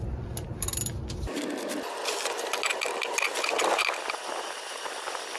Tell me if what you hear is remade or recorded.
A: recorded